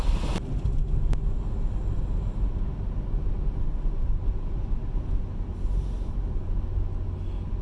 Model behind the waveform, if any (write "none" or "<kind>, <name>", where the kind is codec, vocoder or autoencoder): none